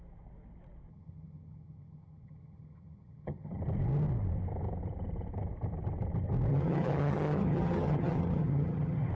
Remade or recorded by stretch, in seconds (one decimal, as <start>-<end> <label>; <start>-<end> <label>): 0.0-0.9 recorded; 0.9-3.6 remade; 3.6-6.5 recorded; 6.5-9.1 remade